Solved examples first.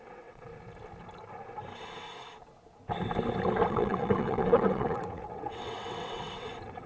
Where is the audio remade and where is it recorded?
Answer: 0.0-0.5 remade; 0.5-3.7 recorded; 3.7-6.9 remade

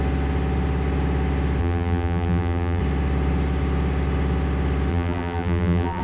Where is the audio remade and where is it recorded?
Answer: 0.0-1.6 recorded; 1.6-2.8 remade; 2.8-4.9 recorded; 4.9-6.0 remade